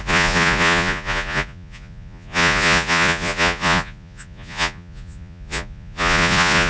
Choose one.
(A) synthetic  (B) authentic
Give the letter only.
A